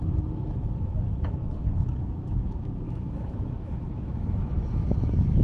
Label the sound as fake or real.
fake